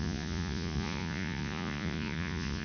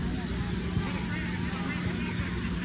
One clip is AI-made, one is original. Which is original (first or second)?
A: second